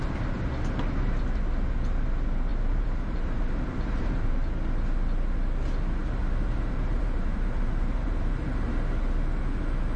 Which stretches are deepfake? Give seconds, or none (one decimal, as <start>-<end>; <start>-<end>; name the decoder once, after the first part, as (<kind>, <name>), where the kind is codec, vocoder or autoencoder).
2.5-4.3 (vocoder, BigVGAN v2); 6.0-8.4